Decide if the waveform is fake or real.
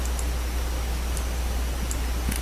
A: real